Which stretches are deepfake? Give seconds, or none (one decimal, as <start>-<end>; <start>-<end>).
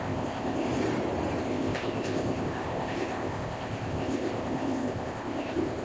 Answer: 0.0-0.7; 1.4-5.8